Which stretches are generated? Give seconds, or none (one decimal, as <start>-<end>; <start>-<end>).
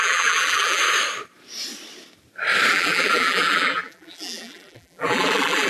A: 0.0-0.8; 2.7-5.7